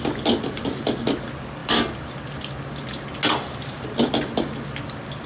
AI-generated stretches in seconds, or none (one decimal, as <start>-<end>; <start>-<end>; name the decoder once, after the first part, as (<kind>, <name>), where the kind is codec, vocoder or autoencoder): none